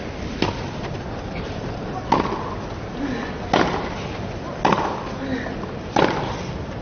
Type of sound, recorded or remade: recorded